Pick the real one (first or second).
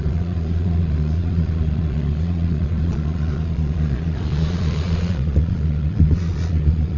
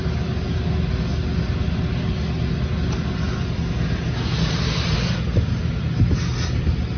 second